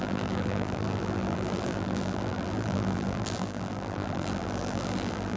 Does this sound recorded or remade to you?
remade